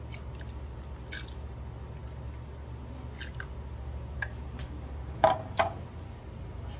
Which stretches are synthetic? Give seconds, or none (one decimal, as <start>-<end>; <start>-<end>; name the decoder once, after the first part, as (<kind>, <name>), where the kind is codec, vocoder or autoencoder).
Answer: none